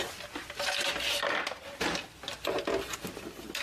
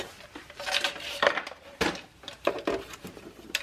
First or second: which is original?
first